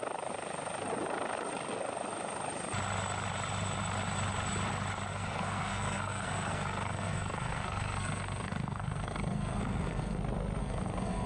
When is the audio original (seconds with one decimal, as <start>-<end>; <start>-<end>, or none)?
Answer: 0.0-5.1; 10.2-10.6